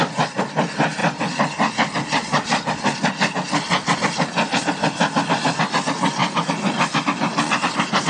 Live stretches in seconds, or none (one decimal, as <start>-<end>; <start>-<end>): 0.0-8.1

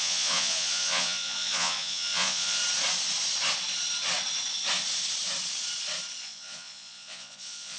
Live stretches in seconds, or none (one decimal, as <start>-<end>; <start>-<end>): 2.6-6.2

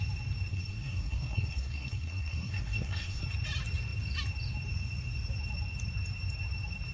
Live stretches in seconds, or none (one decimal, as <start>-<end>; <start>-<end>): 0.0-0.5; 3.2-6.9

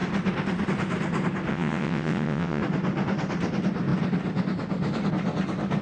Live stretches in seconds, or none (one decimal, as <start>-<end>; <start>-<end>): 0.0-1.5; 2.6-5.8